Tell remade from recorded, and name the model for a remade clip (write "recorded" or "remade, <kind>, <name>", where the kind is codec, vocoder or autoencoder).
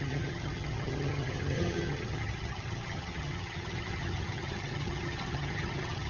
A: remade, vocoder, HiFi-GAN